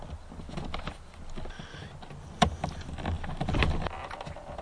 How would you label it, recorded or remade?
recorded